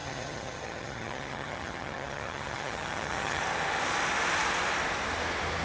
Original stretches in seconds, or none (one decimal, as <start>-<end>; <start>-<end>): 3.4-5.6